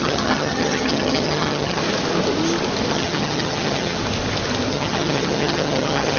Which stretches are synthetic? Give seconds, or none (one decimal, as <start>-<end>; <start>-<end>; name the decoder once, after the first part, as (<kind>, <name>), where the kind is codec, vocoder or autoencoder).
0.0-1.8 (vocoder, HiFi-GAN); 2.9-4.0; 4.7-6.2